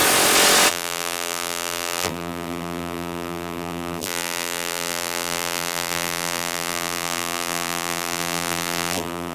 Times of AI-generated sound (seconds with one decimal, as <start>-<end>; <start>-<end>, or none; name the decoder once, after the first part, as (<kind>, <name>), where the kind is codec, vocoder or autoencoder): 0.7-9.3 (vocoder, BigVGAN v2)